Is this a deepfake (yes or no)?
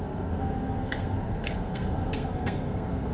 yes